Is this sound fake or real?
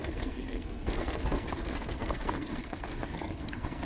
fake